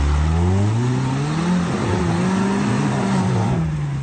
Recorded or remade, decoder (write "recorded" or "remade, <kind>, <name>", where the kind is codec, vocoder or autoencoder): recorded